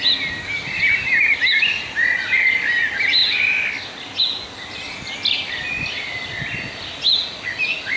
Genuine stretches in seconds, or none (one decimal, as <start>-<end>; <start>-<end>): 0.0-8.0